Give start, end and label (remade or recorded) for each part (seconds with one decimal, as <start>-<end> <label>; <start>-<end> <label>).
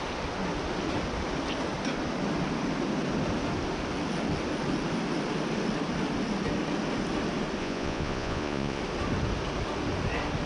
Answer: 0.0-7.6 recorded; 7.6-8.8 remade; 8.8-10.5 recorded